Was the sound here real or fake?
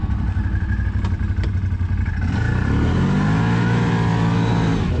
real